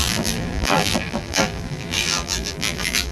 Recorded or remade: remade